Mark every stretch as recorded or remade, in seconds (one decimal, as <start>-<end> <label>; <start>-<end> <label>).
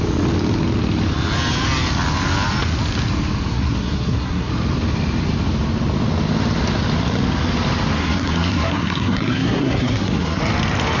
0.0-3.5 recorded; 3.5-4.5 remade; 4.5-8.0 recorded; 8.0-10.4 remade; 10.4-11.0 recorded